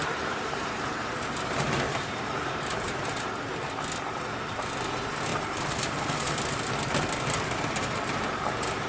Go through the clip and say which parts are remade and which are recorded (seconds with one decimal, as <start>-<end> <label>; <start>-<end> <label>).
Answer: 0.0-3.3 remade; 3.3-5.3 recorded; 5.3-6.7 remade; 6.7-8.9 recorded